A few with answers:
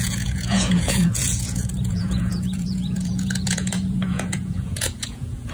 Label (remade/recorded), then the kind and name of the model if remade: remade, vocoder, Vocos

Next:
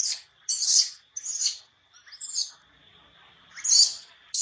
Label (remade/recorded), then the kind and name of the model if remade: recorded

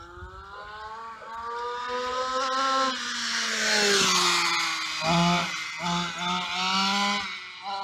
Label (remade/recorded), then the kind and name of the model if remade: recorded